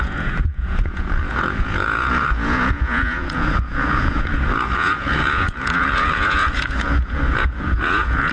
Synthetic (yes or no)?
yes